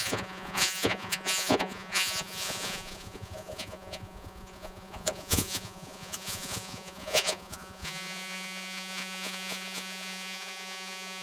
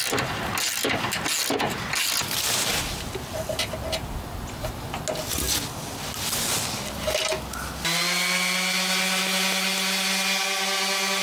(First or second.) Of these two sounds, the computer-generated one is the first